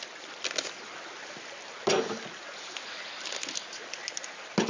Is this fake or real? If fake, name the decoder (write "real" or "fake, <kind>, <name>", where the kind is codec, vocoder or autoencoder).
real